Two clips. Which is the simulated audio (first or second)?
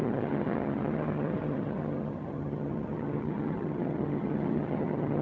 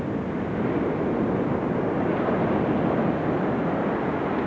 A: first